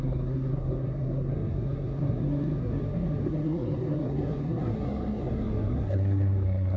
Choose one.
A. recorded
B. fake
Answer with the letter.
B